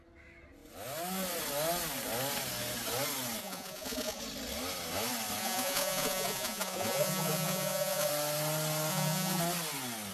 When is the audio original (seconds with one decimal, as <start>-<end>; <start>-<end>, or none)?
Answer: 0.0-3.4; 4.2-5.4; 8.1-8.9; 9.4-10.1

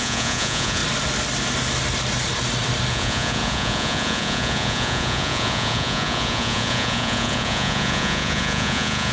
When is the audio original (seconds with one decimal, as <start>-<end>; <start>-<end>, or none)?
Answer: 0.8-2.9

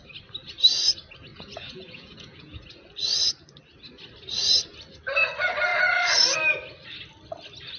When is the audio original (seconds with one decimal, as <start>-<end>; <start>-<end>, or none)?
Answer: 0.0-1.3; 2.6-7.8

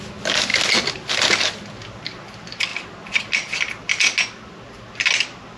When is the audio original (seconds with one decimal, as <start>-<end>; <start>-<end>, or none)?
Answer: 0.0-5.6

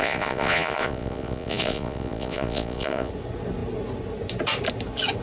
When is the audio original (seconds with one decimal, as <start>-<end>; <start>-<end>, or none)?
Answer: 3.1-5.2

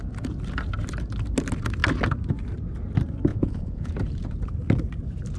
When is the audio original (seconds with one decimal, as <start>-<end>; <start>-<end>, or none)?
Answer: 0.0-3.3; 3.9-5.4

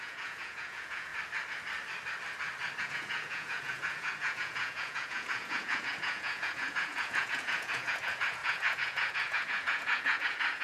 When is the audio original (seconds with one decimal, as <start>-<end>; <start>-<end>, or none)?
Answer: 1.1-2.8

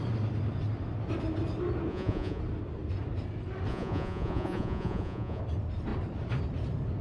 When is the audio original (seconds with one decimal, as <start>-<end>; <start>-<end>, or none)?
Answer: 0.0-1.9; 2.4-3.7; 5.4-7.0